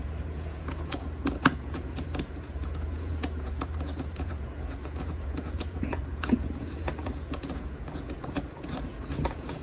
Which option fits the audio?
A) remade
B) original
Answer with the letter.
A